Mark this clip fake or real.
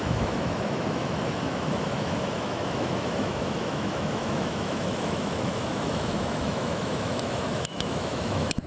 fake